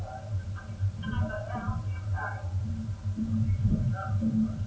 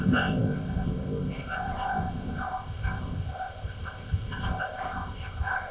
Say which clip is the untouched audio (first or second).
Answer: first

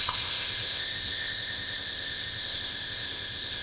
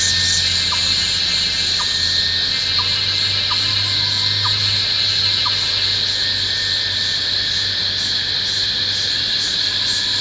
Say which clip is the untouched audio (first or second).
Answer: second